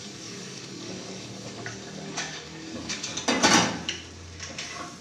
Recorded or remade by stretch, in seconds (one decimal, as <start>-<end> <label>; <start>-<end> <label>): 0.0-3.1 remade; 3.1-5.0 recorded